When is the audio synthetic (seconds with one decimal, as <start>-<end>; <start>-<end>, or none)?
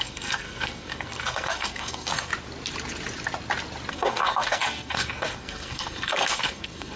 0.0-2.3; 3.9-7.0